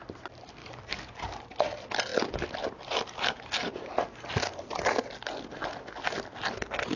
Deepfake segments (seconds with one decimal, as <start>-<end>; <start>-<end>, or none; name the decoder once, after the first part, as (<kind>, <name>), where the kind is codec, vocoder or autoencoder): 0.6-1.4 (codec, DAC)